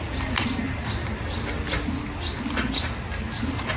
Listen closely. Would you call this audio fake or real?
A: real